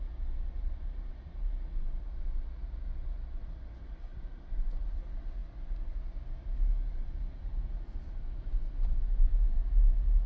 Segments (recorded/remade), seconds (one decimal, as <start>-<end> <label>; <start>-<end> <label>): 0.0-1.1 recorded; 1.1-1.6 remade; 1.6-4.1 recorded; 4.1-5.0 remade; 5.0-10.3 recorded